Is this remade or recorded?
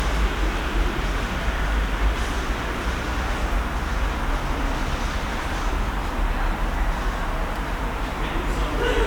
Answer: recorded